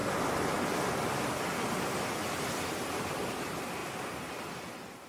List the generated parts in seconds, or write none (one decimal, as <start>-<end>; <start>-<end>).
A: none